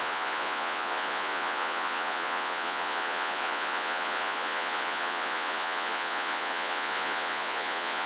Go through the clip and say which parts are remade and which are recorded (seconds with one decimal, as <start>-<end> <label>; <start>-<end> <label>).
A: 0.0-8.1 remade